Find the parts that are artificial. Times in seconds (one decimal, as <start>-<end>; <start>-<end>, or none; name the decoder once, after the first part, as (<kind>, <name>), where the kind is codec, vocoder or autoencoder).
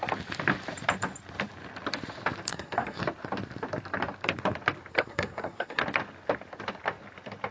2.5-3.0 (codec, SNAC); 4.9-5.8